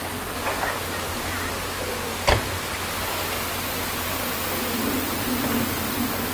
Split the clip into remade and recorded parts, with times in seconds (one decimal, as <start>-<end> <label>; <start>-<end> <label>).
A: 0.0-6.3 recorded